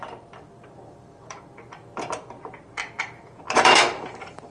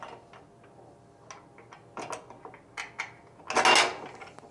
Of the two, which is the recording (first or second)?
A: second